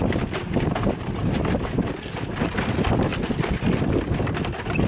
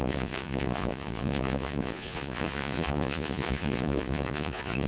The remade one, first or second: second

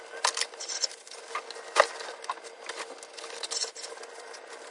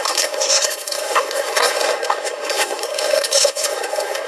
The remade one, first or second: second